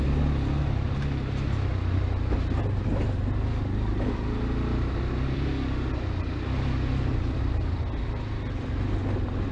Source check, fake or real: real